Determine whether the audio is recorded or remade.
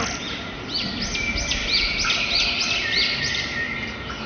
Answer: recorded